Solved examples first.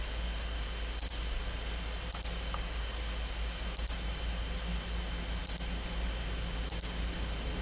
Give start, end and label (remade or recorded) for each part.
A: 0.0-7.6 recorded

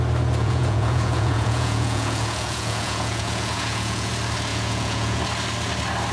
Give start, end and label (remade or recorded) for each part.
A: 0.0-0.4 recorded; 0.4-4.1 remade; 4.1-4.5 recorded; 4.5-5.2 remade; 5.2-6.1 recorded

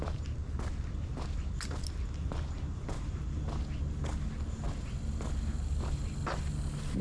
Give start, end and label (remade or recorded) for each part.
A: 0.0-7.0 recorded

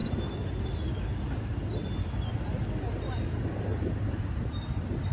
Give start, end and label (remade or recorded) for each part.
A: 0.0-5.1 recorded